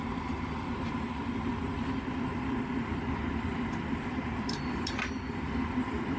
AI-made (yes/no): yes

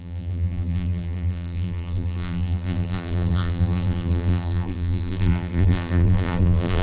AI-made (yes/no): yes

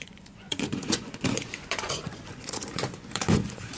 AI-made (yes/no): yes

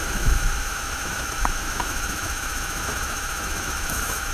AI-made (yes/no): yes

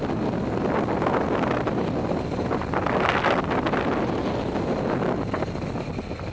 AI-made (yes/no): no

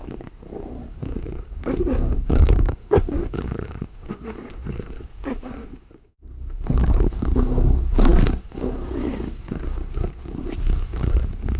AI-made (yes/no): yes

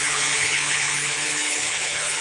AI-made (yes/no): yes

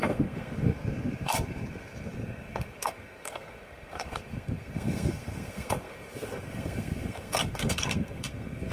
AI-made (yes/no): yes